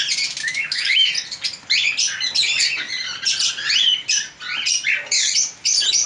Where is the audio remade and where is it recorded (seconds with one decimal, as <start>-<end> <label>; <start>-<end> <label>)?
0.0-0.4 recorded; 0.4-1.1 remade; 1.1-6.1 recorded